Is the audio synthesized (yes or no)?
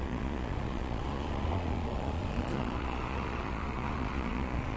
yes